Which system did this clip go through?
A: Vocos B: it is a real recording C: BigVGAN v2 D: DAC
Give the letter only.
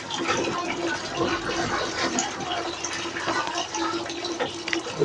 B